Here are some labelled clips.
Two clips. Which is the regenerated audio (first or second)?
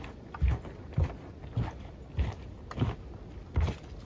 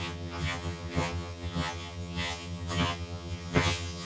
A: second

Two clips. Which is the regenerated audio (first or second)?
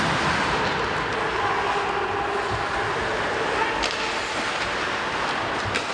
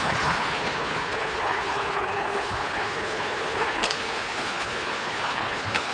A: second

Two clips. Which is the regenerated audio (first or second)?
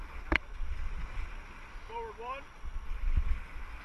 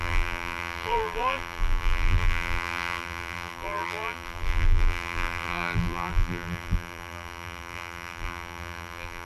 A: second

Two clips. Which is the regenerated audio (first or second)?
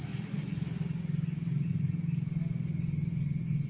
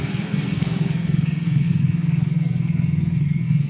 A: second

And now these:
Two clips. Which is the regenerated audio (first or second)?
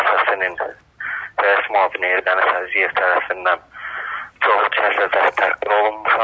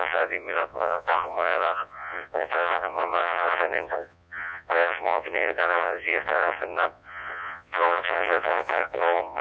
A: second